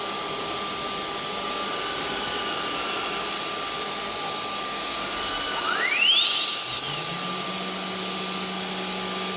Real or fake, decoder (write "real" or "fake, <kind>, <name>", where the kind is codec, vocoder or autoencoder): real